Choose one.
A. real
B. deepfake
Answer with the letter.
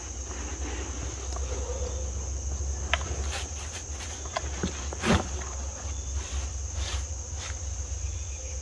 A